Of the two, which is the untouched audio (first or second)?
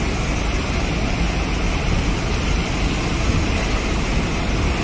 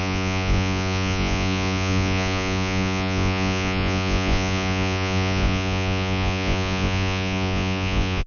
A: first